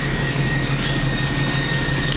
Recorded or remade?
remade